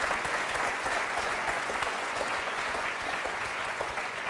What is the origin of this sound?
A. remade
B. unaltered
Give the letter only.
A